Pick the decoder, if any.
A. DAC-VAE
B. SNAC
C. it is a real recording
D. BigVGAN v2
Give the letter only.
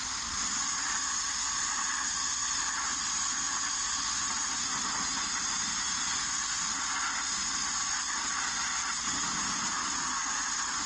C